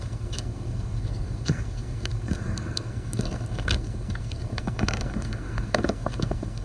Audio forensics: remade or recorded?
remade